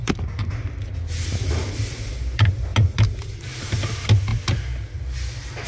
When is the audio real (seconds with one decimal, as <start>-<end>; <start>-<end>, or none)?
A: 0.0-5.7